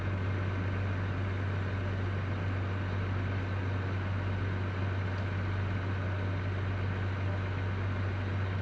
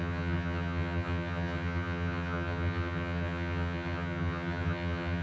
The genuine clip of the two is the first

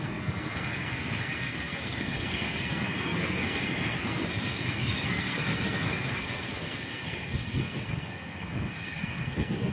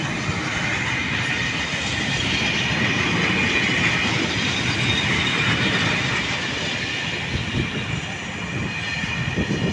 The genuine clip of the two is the second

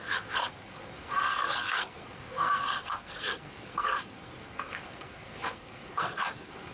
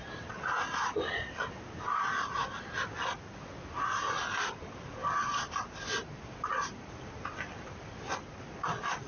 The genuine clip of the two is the second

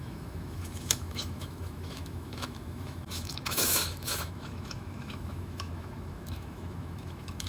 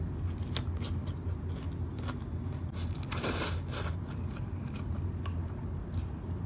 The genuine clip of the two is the second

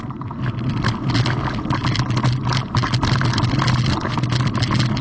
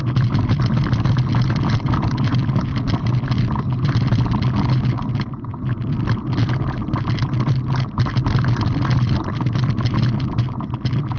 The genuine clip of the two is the first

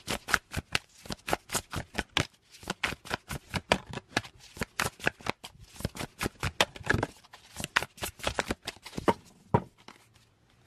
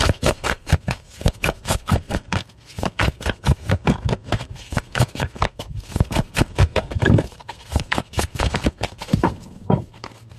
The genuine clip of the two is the first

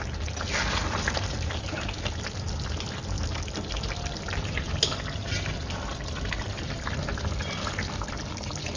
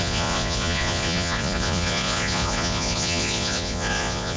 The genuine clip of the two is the first